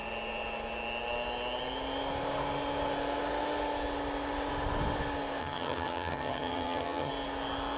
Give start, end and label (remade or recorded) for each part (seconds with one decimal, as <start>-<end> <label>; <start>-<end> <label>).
0.0-5.4 recorded; 5.4-7.1 remade; 7.1-7.8 recorded